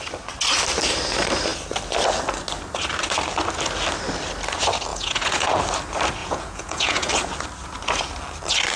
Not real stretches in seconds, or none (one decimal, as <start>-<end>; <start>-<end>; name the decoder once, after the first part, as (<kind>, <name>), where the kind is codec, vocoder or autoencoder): 4.9-5.6 (vocoder, Vocos); 6.2-7.1